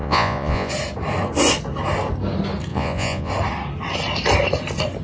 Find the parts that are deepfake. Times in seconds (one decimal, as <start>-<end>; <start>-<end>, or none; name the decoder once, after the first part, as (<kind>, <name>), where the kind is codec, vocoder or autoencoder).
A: 0.0-0.7 (vocoder, Vocos); 2.7-3.3